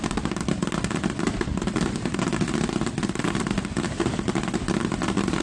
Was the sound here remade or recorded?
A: recorded